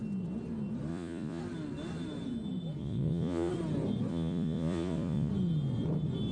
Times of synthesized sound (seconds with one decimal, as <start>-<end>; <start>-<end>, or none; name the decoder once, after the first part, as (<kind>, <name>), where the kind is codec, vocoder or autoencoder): 0.9-1.4 (vocoder, Vocos); 2.8-3.5; 4.1-5.3